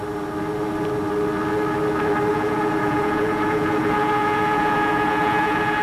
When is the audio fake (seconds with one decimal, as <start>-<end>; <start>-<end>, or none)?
2.3-5.8